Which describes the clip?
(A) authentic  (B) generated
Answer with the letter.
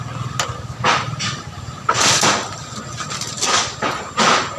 A